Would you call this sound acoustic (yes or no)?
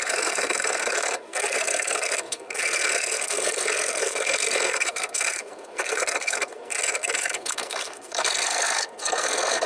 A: no